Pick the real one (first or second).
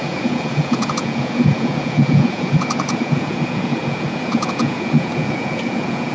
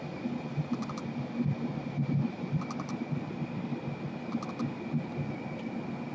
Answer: second